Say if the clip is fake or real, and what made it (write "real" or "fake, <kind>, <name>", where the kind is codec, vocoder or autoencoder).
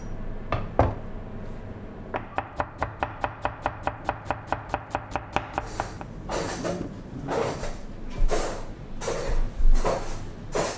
real